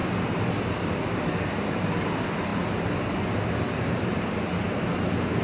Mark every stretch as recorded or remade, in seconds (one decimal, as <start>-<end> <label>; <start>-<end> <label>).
0.0-5.4 recorded